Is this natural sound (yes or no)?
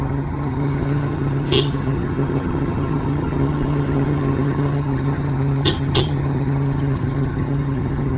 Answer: no